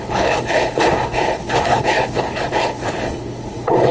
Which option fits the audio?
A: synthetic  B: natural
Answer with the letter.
A